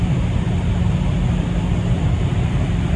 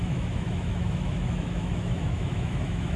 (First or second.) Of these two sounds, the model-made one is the second